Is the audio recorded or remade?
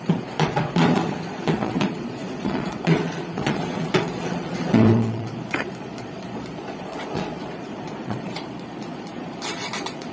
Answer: remade